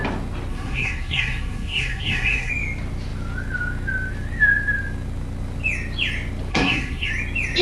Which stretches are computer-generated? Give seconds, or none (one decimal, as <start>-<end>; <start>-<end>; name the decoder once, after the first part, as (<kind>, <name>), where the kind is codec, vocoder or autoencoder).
0.5-2.5 (codec, SNAC); 6.5-7.1